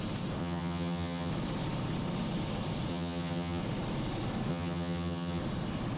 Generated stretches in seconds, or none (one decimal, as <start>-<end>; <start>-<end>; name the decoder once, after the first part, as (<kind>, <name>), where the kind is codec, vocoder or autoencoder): 0.4-1.3 (vocoder, HiFi-GAN); 2.9-3.6; 4.5-5.4